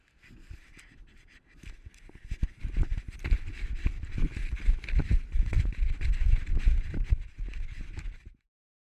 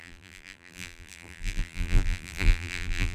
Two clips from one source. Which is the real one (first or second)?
first